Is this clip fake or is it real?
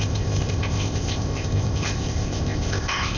fake